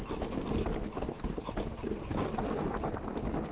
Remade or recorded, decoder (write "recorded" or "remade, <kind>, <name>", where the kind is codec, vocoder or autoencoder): recorded